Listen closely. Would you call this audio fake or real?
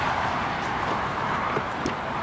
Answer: fake